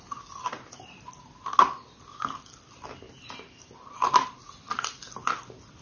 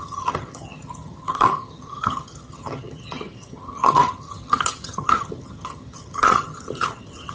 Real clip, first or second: first